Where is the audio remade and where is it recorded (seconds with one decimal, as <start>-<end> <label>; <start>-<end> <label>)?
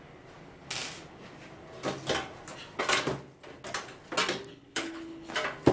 0.0-4.5 recorded; 4.5-5.3 remade; 5.3-5.7 recorded